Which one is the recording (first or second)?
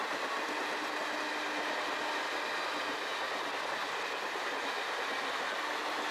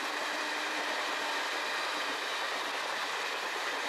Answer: first